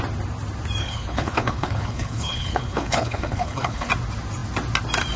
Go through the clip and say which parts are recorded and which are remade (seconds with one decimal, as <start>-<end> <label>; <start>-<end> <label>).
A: 0.0-0.8 recorded; 0.8-3.9 remade; 3.9-5.2 recorded